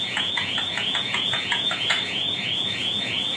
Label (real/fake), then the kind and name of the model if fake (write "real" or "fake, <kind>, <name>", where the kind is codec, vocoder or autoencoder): fake, vocoder, Vocos